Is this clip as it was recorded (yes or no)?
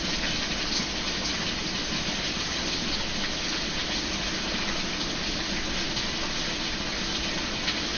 yes